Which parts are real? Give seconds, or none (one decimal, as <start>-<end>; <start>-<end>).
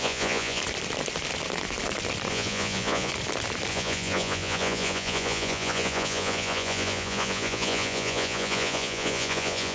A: 0.6-2.3; 3.1-3.7